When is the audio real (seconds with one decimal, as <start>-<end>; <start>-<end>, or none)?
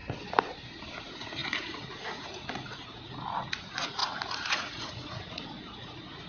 0.0-1.0